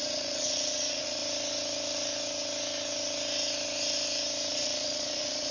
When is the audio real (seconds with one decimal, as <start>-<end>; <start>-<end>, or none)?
1.2-4.5